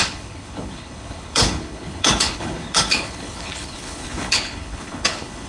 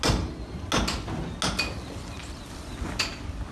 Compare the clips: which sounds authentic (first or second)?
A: second